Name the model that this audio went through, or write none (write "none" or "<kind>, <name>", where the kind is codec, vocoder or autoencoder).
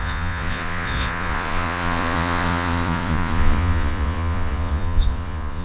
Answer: vocoder, Vocos